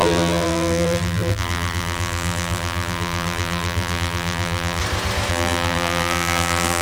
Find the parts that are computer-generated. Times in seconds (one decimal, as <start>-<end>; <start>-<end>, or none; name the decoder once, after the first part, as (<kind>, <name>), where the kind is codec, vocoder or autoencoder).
0.0-4.8 (vocoder, BigVGAN v2); 5.3-6.8